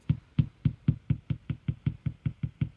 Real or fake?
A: real